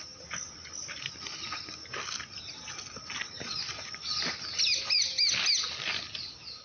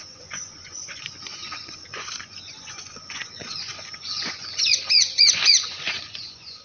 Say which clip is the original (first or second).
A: first